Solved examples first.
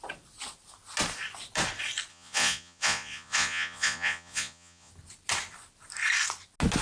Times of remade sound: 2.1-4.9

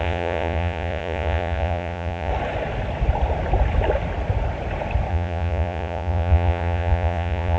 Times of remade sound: 0.0-2.3; 5.1-7.6

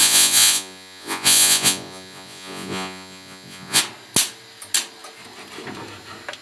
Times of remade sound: 0.0-3.8

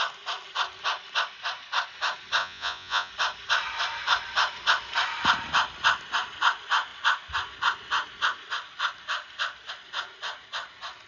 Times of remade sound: 2.4-3.1